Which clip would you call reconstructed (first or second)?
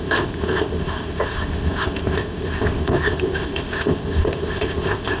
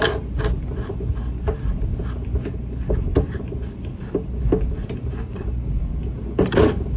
first